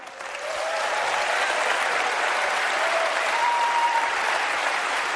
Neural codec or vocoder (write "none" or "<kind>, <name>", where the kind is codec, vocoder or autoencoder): vocoder, BigVGAN v2